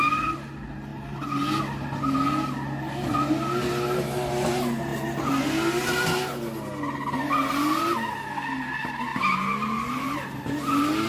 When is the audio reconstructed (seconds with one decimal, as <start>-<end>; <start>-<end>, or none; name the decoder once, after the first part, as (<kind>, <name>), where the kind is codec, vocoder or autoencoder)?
none